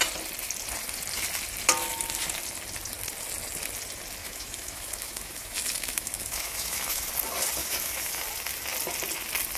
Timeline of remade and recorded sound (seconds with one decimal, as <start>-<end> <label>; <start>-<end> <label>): 0.0-4.2 recorded; 4.2-7.1 remade; 7.1-7.6 recorded; 7.6-8.2 remade; 8.2-9.6 recorded